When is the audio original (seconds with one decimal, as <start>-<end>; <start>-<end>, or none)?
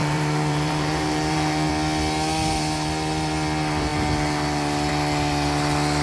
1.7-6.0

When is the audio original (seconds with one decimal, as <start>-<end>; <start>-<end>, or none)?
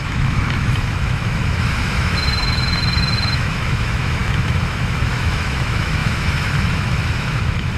none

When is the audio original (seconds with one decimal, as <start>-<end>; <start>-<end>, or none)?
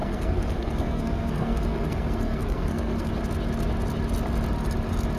3.1-5.2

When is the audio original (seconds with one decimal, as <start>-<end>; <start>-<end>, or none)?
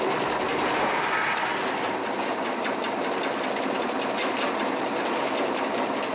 0.0-6.1